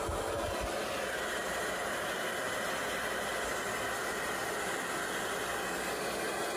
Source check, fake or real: real